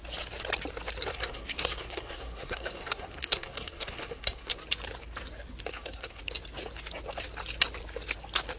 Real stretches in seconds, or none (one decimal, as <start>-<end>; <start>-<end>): 0.0-1.1; 4.6-5.7; 6.2-8.6